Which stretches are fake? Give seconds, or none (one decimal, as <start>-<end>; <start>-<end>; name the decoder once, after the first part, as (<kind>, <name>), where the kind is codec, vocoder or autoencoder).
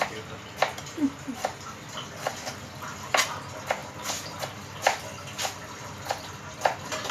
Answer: none